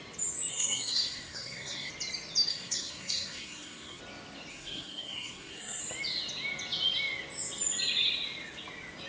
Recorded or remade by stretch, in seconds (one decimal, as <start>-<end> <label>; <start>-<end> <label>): 0.0-0.5 recorded; 0.5-1.9 remade; 1.9-2.5 recorded; 2.5-4.0 remade; 4.0-4.5 recorded; 4.5-5.8 remade; 5.8-9.1 recorded